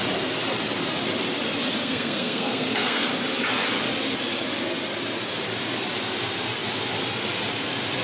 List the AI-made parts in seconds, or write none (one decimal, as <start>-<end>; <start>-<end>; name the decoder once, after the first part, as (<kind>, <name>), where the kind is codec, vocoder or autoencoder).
1.8-3.1 (codec, SNAC)

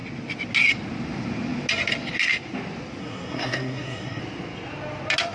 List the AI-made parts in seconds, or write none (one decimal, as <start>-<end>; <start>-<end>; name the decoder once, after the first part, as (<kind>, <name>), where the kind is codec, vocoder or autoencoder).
3.0-4.2 (codec, SNAC)